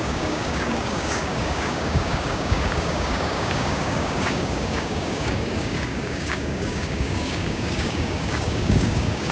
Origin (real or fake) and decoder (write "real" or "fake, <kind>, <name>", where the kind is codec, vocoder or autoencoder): fake, codec, DAC